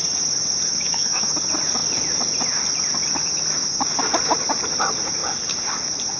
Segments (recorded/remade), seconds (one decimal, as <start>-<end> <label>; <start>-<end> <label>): 0.0-0.7 recorded; 0.7-1.3 remade; 1.3-6.2 recorded